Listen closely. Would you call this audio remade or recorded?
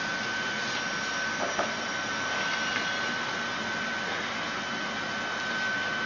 recorded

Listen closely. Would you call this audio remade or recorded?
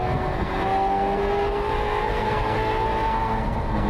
remade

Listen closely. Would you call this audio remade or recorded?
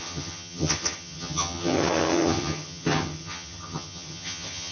remade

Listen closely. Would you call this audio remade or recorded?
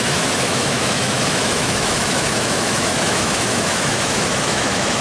remade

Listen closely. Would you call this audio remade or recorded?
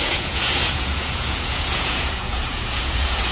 remade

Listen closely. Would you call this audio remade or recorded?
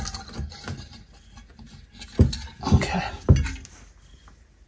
recorded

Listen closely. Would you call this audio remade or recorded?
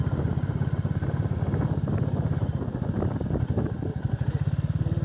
recorded